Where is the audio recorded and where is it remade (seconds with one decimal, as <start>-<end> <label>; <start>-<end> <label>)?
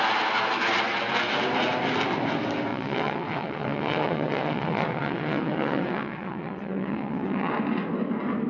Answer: 0.0-2.7 recorded; 2.7-7.5 remade; 7.5-8.5 recorded